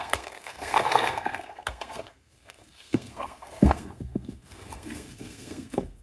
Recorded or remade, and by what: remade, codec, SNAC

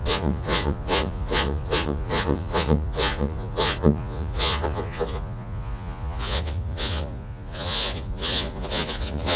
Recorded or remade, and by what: remade, vocoder, Vocos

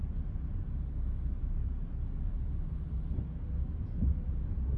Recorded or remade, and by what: recorded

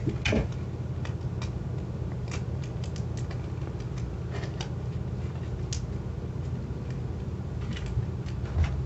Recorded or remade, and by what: recorded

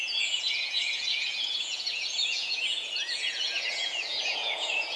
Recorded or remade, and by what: remade, vocoder, Vocos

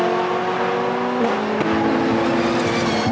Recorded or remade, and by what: recorded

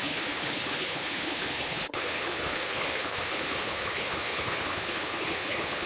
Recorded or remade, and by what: remade, codec, HILCodec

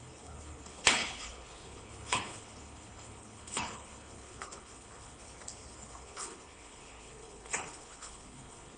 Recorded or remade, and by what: remade, codec, HILCodec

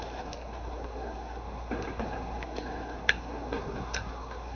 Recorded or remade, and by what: remade, codec, SNAC